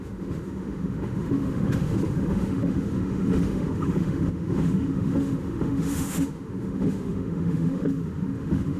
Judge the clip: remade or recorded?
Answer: remade